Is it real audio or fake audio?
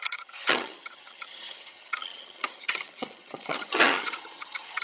fake